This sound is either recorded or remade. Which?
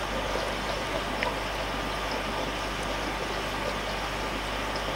recorded